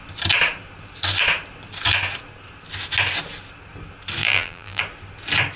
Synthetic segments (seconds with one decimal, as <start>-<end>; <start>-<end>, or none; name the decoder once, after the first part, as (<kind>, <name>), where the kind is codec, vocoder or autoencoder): 4.2-4.8 (vocoder, BigVGAN v2)